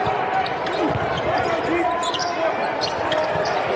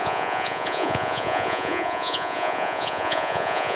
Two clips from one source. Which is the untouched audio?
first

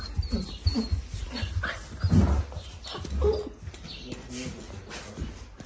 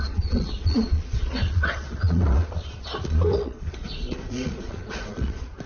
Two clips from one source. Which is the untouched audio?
first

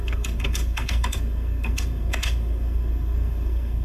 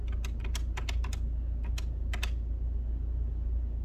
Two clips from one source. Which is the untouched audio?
second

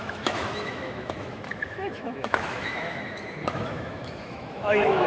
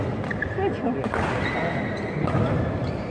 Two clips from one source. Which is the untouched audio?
second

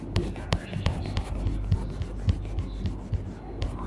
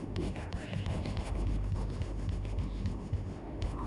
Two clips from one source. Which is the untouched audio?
first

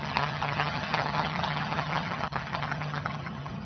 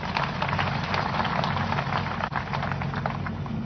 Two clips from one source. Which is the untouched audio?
second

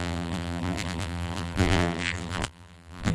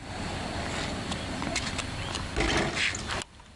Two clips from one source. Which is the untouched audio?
second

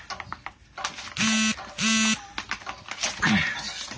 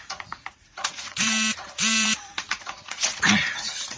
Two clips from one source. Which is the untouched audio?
first